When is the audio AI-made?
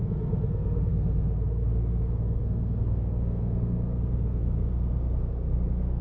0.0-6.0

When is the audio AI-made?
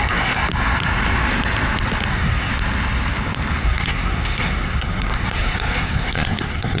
0.0-0.4; 2.1-2.5; 3.6-6.8